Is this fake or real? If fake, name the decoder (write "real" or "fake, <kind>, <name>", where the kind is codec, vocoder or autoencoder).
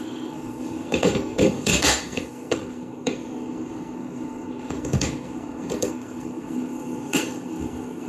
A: fake, codec, SNAC